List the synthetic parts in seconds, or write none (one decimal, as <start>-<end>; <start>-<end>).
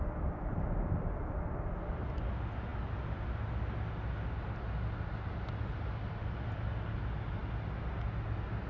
none